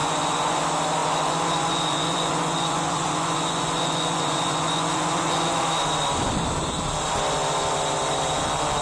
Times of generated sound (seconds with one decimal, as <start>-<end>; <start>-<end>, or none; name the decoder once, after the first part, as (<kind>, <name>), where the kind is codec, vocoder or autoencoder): 0.0-0.6 (vocoder, Vocos); 1.0-5.6